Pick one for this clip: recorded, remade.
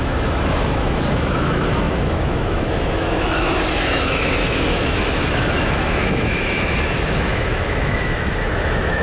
remade